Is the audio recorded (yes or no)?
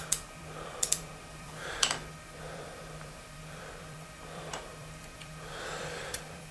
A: no